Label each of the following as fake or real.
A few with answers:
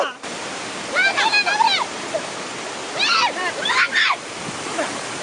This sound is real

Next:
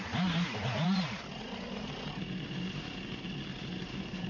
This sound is real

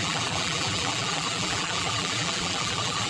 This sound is fake